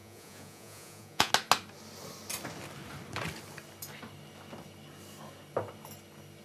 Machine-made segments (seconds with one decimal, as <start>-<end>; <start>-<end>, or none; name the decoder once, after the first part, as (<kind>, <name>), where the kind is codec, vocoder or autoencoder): 0.0-1.3 (vocoder, Vocos)